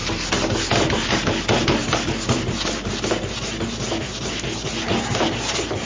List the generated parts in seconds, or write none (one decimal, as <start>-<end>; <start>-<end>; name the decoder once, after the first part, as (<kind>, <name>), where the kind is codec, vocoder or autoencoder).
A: none